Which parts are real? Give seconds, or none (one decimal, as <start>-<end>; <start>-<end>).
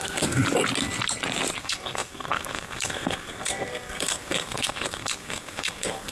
0.4-1.6